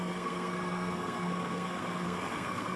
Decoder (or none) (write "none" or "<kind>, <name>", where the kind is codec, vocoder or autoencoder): codec, SNAC